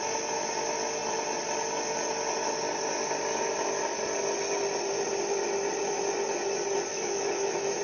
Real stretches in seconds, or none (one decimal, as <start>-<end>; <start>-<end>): 0.0-6.9